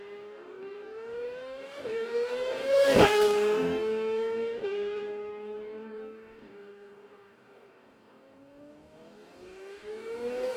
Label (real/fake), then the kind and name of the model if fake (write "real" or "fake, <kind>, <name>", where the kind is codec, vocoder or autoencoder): fake, codec, DAC